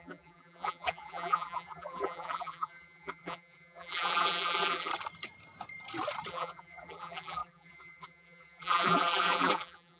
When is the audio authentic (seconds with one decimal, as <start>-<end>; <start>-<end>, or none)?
4.9-6.3